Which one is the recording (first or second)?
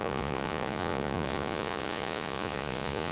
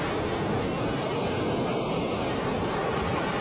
second